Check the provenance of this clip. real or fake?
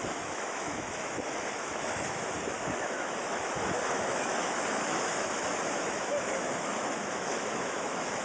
fake